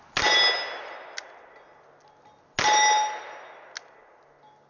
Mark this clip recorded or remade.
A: recorded